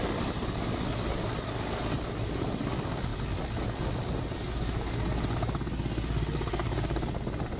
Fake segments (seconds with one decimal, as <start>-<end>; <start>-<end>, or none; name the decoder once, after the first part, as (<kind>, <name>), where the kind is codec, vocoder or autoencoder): none